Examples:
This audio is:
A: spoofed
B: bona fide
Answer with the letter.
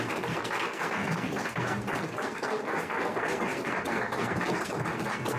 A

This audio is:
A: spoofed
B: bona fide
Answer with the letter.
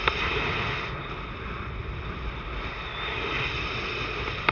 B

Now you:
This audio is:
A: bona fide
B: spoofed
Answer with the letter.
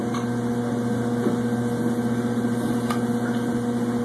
A